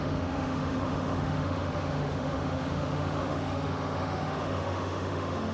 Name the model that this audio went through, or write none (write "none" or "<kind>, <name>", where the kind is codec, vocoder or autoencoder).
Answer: autoencoder, DAC-VAE